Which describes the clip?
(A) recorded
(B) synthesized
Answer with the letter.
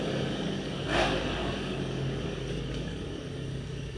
B